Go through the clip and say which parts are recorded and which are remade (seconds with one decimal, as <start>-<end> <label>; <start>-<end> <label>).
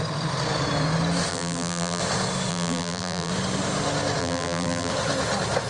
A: 0.0-1.3 recorded; 1.3-2.0 remade; 2.0-2.5 recorded; 2.5-3.3 remade; 3.3-4.2 recorded; 4.2-4.9 remade; 4.9-5.7 recorded